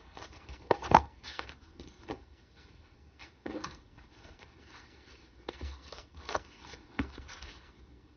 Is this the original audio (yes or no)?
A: no